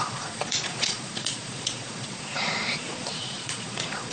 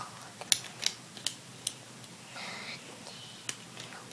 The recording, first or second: second